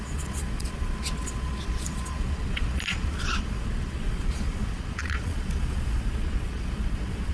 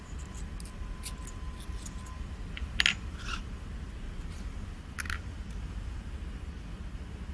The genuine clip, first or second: second